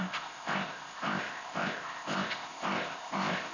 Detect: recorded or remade remade